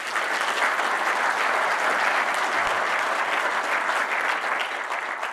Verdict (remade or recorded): recorded